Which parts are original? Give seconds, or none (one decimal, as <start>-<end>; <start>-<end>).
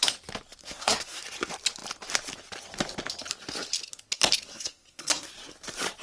0.0-0.6; 1.2-4.5; 5.3-6.0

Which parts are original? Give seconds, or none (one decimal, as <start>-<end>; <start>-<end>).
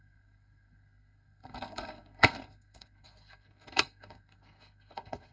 none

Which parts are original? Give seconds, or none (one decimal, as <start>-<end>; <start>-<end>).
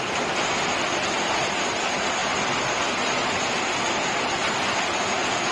0.0-5.5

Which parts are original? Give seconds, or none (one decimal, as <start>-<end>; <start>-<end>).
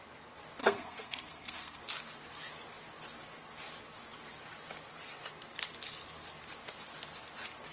0.0-0.6; 1.8-7.7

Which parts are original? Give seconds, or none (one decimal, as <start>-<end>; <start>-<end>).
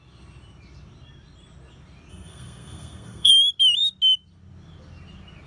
0.0-2.1; 3.3-5.5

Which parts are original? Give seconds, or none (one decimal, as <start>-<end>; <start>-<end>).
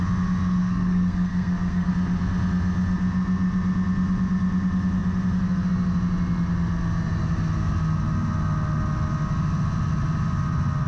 0.0-0.6; 1.9-10.9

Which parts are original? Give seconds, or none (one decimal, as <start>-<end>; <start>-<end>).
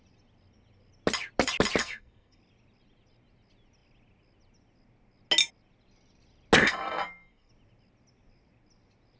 0.0-1.8; 2.4-6.6; 7.5-9.2